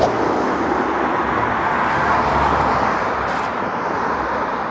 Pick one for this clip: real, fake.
real